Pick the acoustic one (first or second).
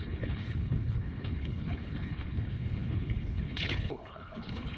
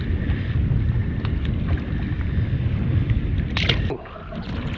second